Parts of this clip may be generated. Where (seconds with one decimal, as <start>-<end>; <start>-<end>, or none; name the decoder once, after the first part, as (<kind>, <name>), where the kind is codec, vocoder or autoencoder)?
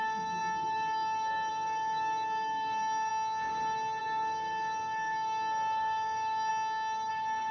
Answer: 0.0-3.1 (codec, DAC); 4.0-6.5; 7.1-7.5